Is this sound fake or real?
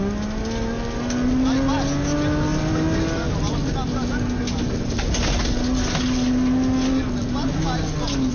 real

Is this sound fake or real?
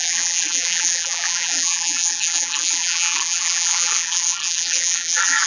fake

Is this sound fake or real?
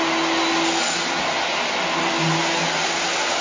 real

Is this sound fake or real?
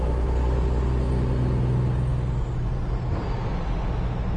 real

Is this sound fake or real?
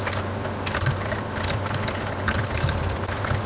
real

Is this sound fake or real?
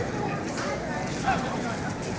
real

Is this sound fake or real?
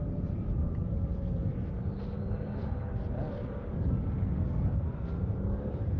real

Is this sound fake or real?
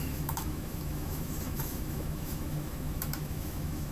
fake